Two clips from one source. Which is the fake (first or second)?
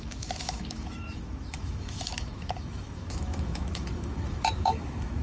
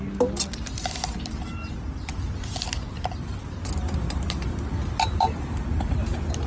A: first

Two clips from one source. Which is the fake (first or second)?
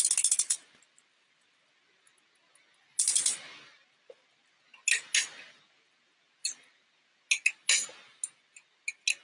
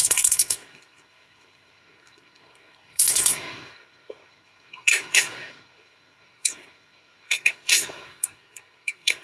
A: second